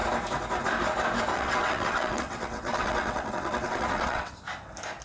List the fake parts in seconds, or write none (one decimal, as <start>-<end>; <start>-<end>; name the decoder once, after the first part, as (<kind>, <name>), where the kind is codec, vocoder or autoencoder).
1.3-4.3 (vocoder, WaveNeXt)